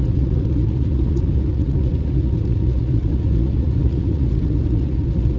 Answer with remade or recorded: remade